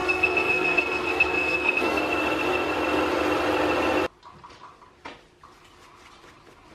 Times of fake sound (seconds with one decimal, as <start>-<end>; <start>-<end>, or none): 0.0-2.0